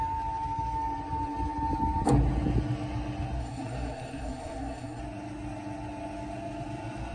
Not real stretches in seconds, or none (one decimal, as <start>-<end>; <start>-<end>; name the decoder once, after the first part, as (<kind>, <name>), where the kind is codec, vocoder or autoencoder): 3.4-5.0 (codec, SNAC)